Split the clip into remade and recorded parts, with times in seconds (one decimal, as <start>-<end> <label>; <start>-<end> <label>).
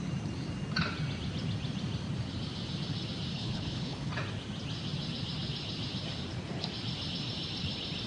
0.0-3.3 recorded; 3.3-4.1 remade; 4.1-8.1 recorded